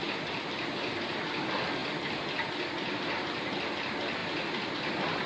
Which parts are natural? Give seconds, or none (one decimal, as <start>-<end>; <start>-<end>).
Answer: 0.0-5.3